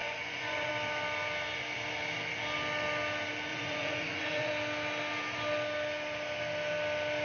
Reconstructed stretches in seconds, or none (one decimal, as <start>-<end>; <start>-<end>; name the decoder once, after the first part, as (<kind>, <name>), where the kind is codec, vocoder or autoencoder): 0.0-0.7 (vocoder, Vocos); 3.5-4.5

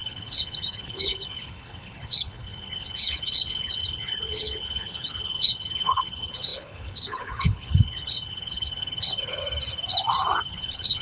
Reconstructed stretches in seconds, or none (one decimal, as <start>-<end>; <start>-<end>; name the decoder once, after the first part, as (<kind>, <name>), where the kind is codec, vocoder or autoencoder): 0.0-9.4 (codec, HILCodec); 10.5-11.0

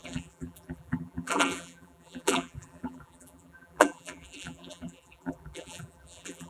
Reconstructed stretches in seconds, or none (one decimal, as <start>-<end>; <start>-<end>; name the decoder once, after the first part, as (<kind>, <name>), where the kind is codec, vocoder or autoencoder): 0.0-6.5 (vocoder, BigVGAN v2)

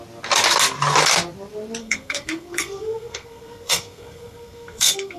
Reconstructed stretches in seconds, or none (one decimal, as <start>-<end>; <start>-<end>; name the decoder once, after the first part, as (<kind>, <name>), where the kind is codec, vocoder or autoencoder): 1.8-5.2 (codec, SNAC)